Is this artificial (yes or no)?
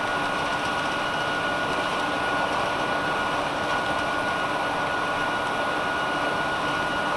no